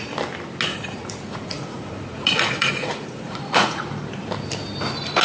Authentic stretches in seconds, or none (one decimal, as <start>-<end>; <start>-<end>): 0.0-0.7; 3.8-5.2